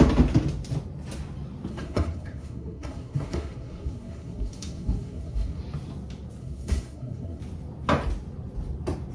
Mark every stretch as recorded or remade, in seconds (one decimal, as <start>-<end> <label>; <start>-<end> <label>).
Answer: 0.0-1.7 recorded; 1.7-5.6 remade; 5.6-6.4 recorded; 6.4-7.4 remade; 7.4-9.1 recorded